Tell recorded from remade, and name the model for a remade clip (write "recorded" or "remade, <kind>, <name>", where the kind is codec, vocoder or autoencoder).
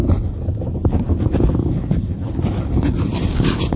recorded